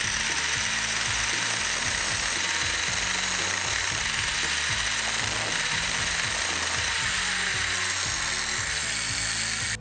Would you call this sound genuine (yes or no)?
yes